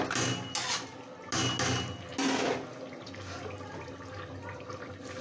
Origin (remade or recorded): recorded